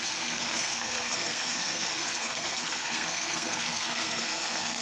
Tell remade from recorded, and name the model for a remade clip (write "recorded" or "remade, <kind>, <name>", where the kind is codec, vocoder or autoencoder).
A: remade, codec, SNAC